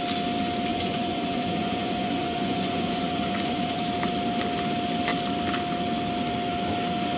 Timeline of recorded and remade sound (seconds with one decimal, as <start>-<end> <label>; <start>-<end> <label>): 0.0-0.7 recorded; 0.7-3.8 remade; 3.8-7.2 recorded